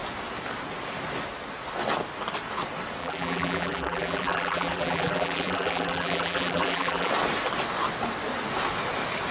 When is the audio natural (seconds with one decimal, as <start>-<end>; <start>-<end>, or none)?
0.0-3.0; 7.1-9.3